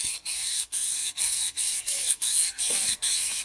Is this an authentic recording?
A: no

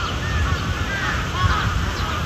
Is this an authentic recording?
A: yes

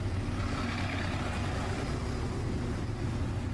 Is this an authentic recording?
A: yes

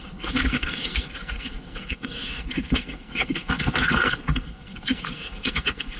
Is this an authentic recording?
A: no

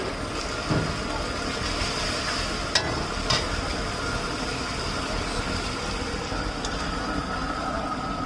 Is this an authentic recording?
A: yes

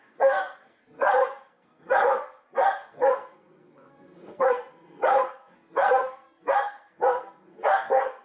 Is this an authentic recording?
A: no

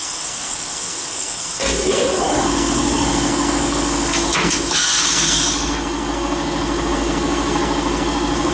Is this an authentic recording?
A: no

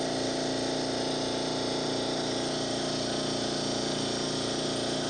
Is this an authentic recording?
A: yes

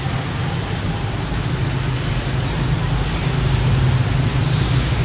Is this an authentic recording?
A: yes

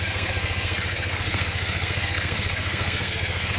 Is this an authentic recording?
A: no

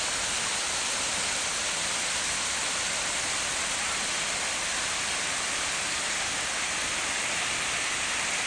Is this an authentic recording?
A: yes